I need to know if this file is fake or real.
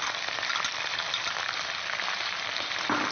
real